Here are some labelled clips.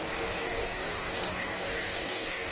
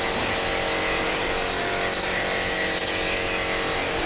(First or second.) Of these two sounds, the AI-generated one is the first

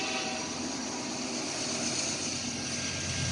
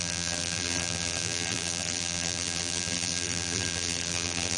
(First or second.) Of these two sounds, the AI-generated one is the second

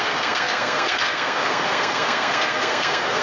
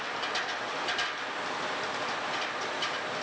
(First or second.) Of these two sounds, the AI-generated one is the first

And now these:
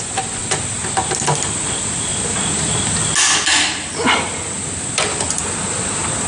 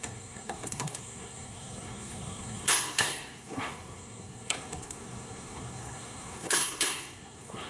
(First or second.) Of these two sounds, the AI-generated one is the second